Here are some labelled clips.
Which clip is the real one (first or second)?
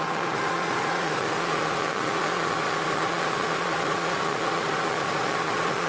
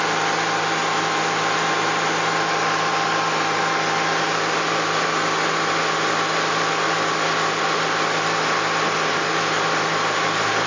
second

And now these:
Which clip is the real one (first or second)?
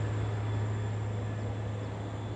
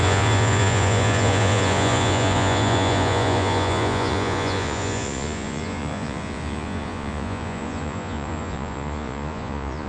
first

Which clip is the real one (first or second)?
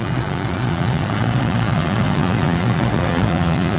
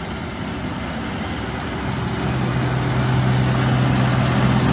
second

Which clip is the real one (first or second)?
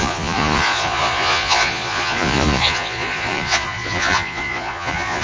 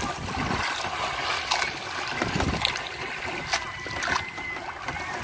second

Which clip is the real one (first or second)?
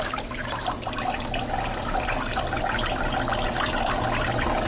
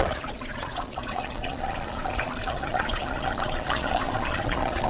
first